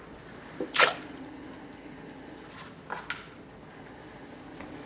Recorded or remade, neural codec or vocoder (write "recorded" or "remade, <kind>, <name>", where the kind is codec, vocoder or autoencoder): recorded